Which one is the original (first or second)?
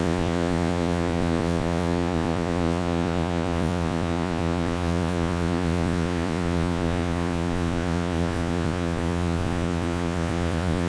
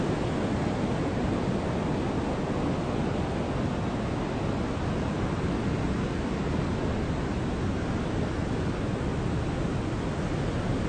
second